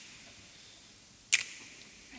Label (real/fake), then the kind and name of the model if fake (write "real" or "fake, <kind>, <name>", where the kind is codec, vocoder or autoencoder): real